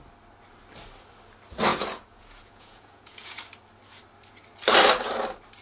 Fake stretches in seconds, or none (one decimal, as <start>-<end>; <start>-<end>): 1.7-3.4